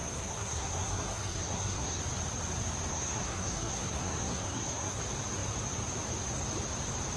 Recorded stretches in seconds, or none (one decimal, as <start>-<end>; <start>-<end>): 2.0-2.9; 5.0-7.2